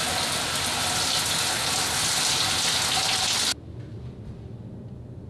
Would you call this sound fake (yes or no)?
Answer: no